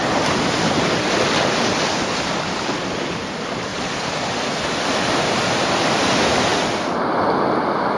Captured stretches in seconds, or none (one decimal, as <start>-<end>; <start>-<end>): 0.0-3.7; 4.3-8.0